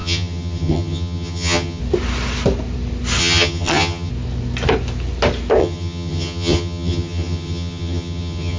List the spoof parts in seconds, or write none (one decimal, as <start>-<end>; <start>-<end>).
0.0-1.8; 3.2-4.1; 5.6-8.6